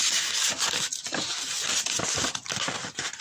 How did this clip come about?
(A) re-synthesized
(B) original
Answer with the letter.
B